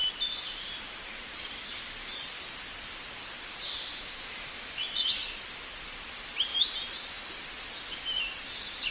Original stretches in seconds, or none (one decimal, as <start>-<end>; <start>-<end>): 0.0-3.0; 4.8-6.1